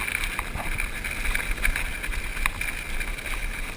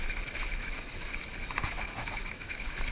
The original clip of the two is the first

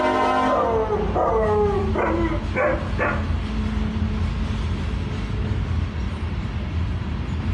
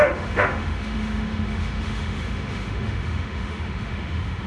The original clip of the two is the first